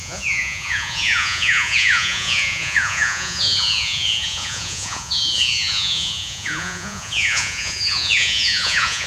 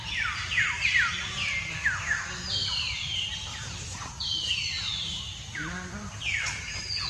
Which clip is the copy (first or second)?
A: first